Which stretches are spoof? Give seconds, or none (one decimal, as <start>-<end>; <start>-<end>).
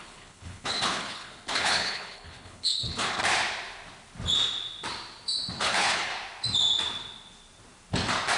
0.0-3.2; 5.6-6.1